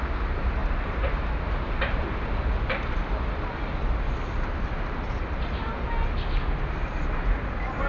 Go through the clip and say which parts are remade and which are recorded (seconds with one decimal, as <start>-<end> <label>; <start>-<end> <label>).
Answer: 0.0-3.0 remade; 3.0-7.9 recorded